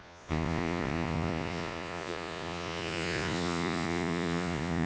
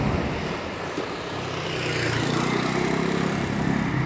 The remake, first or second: first